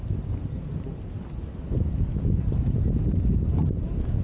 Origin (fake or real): real